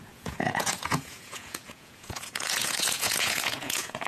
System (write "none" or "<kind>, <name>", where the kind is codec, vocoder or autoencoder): vocoder, Vocos